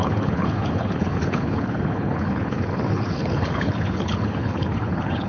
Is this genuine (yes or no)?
no